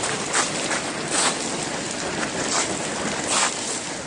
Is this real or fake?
real